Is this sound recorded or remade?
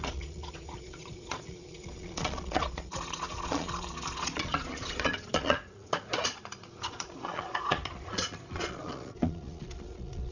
remade